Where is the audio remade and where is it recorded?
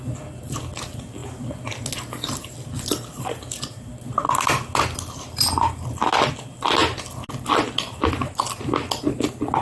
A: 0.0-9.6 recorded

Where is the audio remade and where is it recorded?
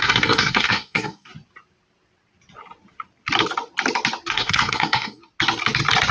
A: 0.0-1.3 remade; 1.3-4.3 recorded; 4.3-5.2 remade; 5.2-6.1 recorded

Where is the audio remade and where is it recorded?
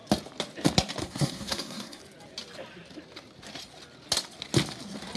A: 0.0-1.0 recorded; 1.0-2.0 remade; 2.0-5.2 recorded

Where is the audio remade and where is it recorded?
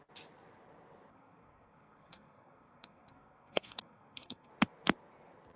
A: 0.0-1.1 recorded; 1.1-4.5 remade; 4.5-5.6 recorded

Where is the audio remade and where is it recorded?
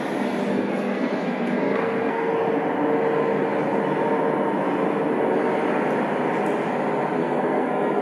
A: 0.0-0.5 recorded; 0.5-2.3 remade; 2.3-7.2 recorded; 7.2-8.0 remade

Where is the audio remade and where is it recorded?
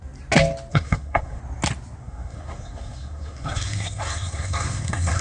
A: 0.0-0.7 recorded; 0.7-1.4 remade; 1.4-2.0 recorded; 2.0-5.2 remade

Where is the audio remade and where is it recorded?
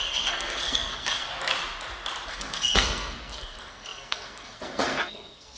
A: 0.0-1.3 remade; 1.3-2.3 recorded; 2.3-5.6 remade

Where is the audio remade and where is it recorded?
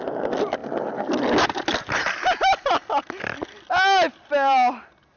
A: 0.0-5.2 recorded